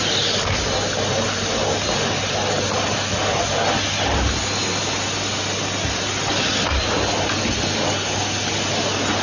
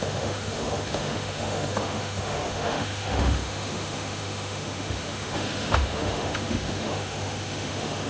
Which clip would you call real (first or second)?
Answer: first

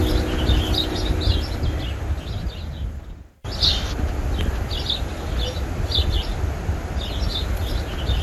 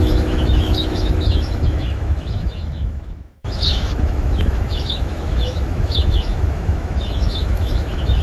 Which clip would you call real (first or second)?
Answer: first